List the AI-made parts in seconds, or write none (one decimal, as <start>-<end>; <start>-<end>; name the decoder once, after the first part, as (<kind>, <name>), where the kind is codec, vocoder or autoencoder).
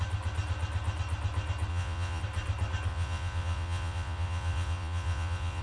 1.7-2.2 (vocoder, Vocos); 2.9-5.6